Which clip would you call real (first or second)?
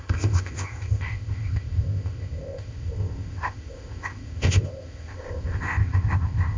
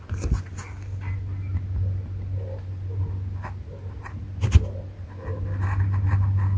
second